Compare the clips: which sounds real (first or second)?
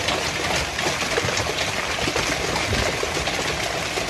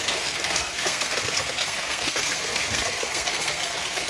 first